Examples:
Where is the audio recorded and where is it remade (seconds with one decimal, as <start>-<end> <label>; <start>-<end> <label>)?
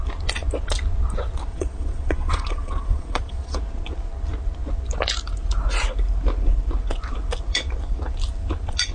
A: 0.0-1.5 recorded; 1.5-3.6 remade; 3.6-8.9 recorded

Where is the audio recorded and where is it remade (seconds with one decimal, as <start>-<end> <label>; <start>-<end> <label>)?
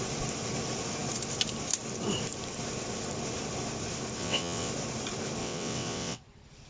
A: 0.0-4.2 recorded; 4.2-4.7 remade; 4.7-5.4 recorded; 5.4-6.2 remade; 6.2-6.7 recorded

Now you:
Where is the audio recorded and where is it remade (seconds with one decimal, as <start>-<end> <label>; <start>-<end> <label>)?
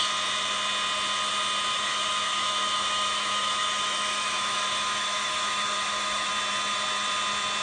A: 0.0-1.7 recorded; 1.7-6.3 remade; 6.3-7.6 recorded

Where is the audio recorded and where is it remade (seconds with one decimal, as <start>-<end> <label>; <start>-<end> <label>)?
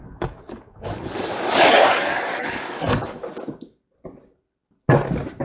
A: 0.0-3.2 remade; 3.2-5.4 recorded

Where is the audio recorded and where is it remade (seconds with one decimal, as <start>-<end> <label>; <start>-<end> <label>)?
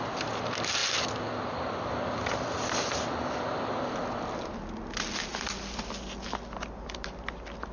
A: 0.0-7.7 recorded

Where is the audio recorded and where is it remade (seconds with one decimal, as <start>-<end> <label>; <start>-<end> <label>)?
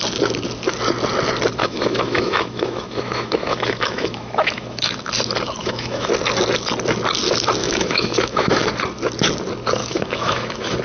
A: 0.0-1.6 recorded; 1.6-5.1 remade; 5.1-5.6 recorded; 5.6-6.1 remade; 6.1-7.6 recorded; 7.6-8.7 remade; 8.7-9.8 recorded; 9.8-10.8 remade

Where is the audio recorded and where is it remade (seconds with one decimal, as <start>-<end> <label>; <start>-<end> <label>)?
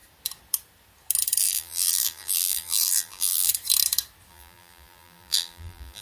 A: 0.0-1.4 recorded; 1.4-3.5 remade; 3.5-4.3 recorded; 4.3-6.0 remade